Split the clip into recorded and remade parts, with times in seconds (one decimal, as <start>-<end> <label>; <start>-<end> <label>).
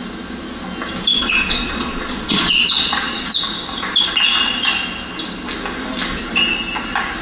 0.0-1.1 recorded; 1.1-3.4 remade; 3.4-7.2 recorded